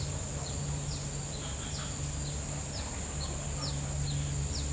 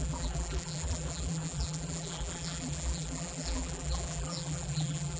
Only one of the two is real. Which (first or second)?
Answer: first